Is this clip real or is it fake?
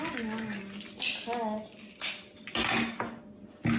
real